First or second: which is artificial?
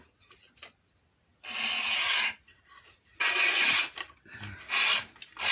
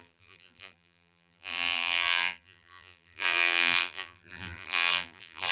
second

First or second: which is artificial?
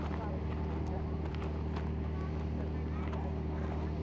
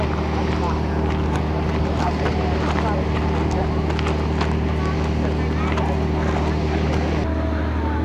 first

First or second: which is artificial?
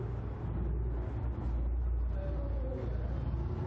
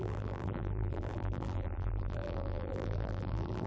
second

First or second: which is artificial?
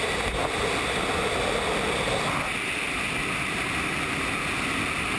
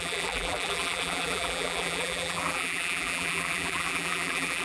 second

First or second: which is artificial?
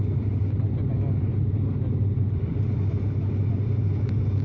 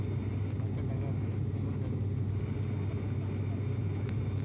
first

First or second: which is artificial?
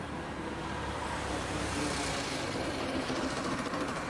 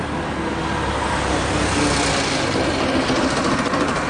first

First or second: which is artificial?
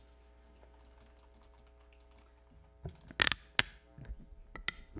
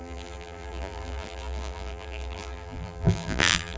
second